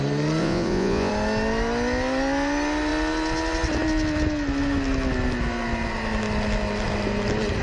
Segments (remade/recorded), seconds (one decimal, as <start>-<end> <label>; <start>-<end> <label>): 0.0-0.4 recorded; 0.4-1.1 remade; 1.1-7.6 recorded